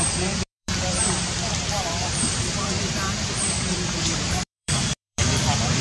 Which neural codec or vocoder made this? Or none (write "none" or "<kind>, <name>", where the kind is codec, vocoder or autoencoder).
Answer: vocoder, BigVGAN v2